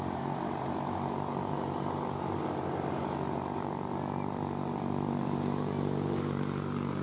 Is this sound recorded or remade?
remade